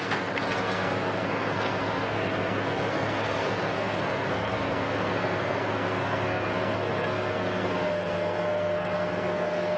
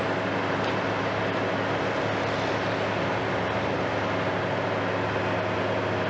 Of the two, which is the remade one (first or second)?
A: first